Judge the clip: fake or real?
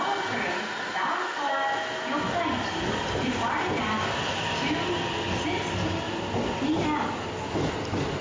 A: real